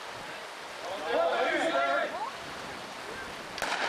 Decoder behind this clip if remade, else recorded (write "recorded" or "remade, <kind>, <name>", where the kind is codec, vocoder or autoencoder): recorded